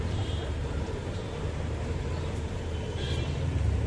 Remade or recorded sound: remade